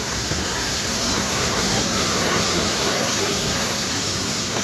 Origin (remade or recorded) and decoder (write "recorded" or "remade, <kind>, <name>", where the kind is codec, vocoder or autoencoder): remade, codec, SNAC